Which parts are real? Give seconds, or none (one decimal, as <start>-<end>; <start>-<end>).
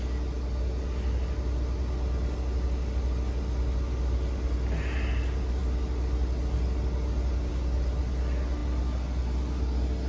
0.0-10.1